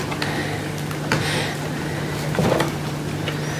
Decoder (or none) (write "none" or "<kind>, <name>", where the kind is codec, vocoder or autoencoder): none